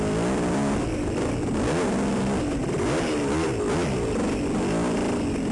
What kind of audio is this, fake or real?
real